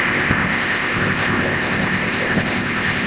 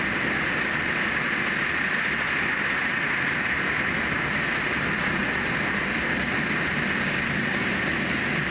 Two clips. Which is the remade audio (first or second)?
first